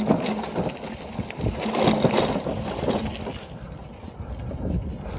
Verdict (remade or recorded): recorded